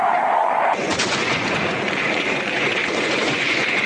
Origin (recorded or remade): remade